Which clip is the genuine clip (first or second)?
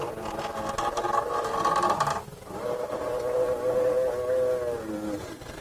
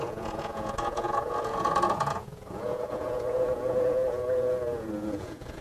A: first